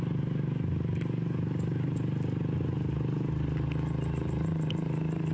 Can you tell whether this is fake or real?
real